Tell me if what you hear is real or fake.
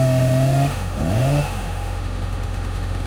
fake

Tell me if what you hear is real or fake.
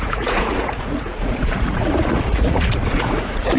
fake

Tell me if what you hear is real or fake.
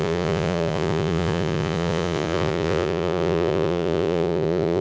fake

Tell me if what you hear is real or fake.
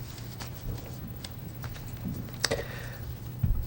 fake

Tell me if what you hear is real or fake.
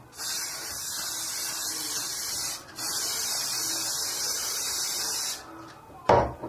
real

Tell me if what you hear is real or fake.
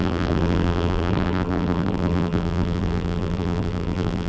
fake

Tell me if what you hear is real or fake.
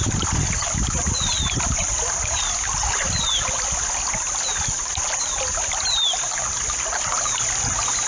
real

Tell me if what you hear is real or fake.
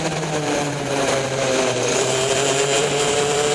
fake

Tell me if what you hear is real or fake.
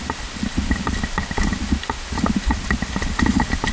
real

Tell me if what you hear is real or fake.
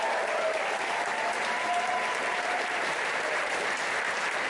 fake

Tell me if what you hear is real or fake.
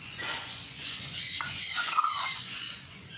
fake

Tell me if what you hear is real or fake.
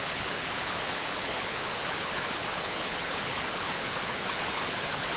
fake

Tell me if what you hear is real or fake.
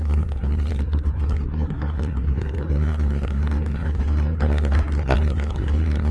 fake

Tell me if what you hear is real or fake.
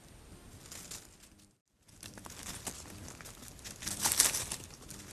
real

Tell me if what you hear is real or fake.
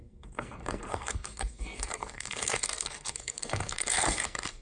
fake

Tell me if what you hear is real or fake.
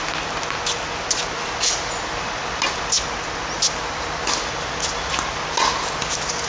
real